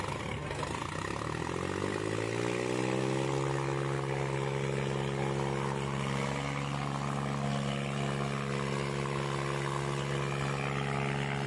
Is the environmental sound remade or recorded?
recorded